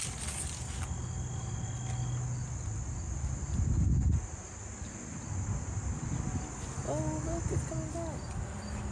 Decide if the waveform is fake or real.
real